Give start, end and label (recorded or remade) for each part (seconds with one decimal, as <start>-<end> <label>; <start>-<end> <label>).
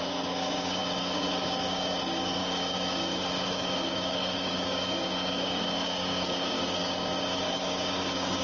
0.0-8.4 remade